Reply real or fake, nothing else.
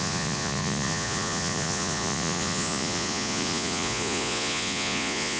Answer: fake